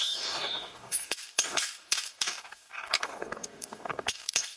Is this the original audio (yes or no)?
no